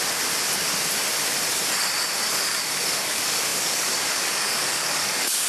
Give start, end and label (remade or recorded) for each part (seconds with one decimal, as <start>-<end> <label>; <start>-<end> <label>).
0.0-2.3 recorded; 2.3-5.5 remade